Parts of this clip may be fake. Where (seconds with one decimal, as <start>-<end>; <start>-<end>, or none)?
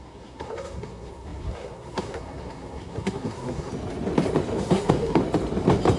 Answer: 0.0-3.7; 4.6-5.2